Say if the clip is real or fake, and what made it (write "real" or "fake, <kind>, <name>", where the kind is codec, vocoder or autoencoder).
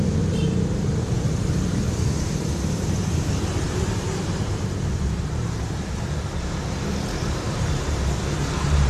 fake, vocoder, BigVGAN v2